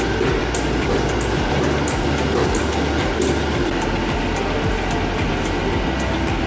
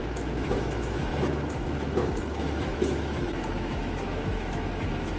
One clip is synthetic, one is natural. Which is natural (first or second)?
first